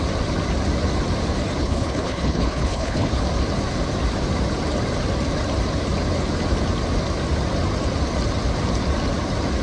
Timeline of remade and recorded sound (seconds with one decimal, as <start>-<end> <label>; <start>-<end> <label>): 0.0-1.6 recorded; 1.6-3.2 remade; 3.2-9.6 recorded